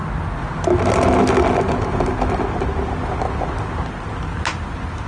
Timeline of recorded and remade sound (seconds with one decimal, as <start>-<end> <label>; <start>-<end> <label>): 0.0-5.1 recorded